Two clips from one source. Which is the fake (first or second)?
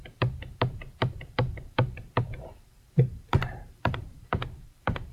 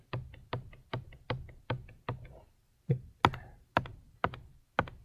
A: first